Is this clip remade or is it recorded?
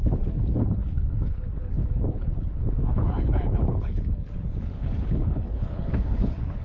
remade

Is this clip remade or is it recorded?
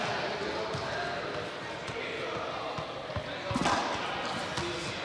recorded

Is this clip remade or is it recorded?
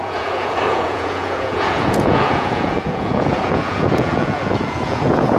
remade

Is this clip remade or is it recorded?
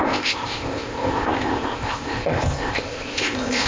remade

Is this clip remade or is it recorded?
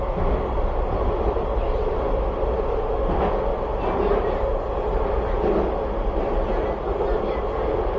recorded